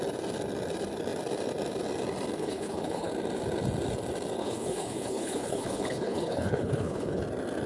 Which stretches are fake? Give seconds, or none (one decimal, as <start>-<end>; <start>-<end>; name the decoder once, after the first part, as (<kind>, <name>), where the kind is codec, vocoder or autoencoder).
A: 2.4-3.1 (codec, HILCodec); 4.4-7.2